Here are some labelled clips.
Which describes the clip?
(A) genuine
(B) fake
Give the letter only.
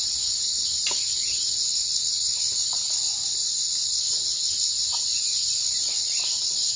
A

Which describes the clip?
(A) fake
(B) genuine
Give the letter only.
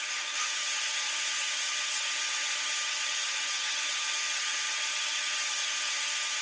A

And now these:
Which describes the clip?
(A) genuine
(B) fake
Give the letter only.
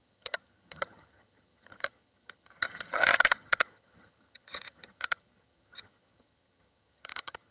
B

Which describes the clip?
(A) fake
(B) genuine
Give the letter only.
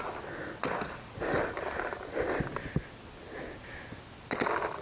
B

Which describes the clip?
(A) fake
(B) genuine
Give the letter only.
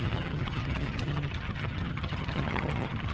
A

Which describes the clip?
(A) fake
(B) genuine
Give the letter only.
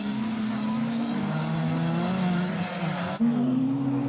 B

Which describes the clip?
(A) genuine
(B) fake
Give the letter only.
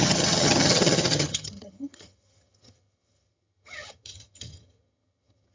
B